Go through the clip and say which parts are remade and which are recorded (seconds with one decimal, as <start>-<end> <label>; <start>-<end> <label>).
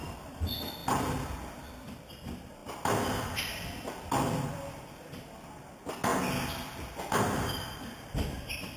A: 0.0-0.8 remade; 0.8-2.1 recorded; 2.1-6.1 remade; 6.1-7.1 recorded; 7.1-8.8 remade